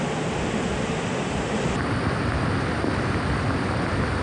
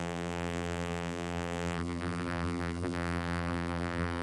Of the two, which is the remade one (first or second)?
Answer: second